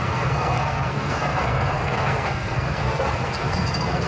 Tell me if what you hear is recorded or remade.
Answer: remade